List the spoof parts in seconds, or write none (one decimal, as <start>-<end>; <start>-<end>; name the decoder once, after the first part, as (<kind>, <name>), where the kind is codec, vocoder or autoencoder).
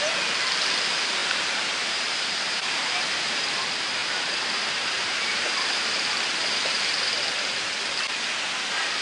1.2-3.6 (vocoder, BigVGAN v2); 4.0-7.6